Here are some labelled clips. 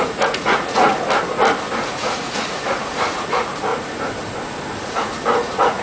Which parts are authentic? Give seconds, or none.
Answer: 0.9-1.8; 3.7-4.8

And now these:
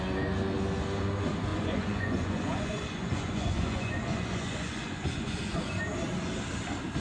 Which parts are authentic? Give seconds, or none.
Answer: 0.0-1.5; 5.6-7.0

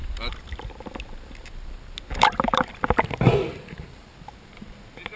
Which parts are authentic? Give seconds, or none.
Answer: 0.0-5.2

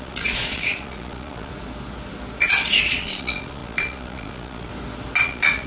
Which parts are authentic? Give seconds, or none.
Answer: 1.5-2.4; 4.7-5.2

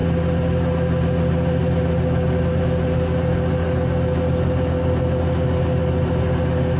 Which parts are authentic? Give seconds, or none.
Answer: 0.0-6.8

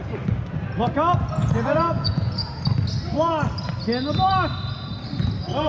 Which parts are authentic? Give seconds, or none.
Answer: 0.0-1.4; 2.6-5.7

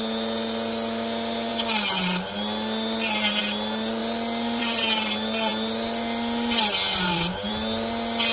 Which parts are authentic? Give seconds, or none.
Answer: 0.0-8.3